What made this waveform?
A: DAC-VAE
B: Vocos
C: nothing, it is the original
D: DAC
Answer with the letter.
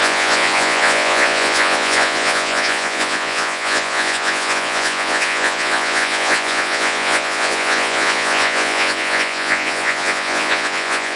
B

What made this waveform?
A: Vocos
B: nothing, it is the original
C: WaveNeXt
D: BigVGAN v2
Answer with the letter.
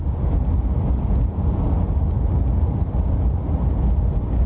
B